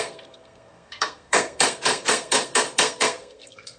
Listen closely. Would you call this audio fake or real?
fake